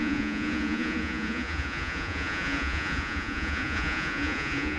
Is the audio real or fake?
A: fake